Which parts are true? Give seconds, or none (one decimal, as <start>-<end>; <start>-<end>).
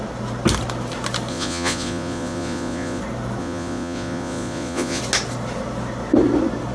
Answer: 0.0-1.3; 3.0-3.4; 5.0-6.7